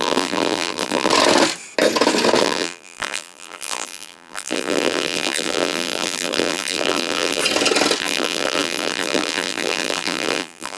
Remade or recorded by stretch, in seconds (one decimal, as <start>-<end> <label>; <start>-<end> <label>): 0.0-1.1 remade; 1.1-2.4 recorded; 2.4-7.4 remade; 7.4-8.0 recorded; 8.0-10.8 remade